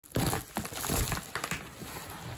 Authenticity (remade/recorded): recorded